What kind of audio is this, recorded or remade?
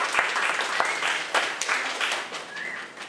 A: recorded